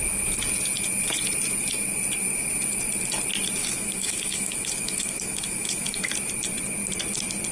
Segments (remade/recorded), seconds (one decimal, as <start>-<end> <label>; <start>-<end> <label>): 0.0-3.6 recorded; 3.6-6.1 remade; 6.1-7.5 recorded

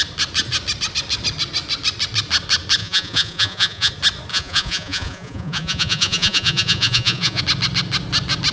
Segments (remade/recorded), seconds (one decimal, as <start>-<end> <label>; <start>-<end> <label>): 0.0-2.8 recorded; 2.8-3.9 remade; 3.9-4.3 recorded; 4.3-7.4 remade; 7.4-8.5 recorded

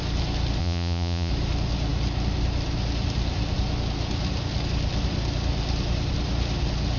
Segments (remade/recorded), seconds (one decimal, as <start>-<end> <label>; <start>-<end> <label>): 0.0-0.6 recorded; 0.6-1.3 remade; 1.3-7.0 recorded